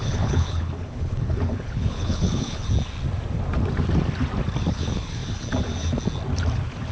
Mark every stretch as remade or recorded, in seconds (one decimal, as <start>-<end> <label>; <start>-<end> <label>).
0.0-2.6 remade; 2.6-4.7 recorded; 4.7-5.2 remade; 5.2-6.9 recorded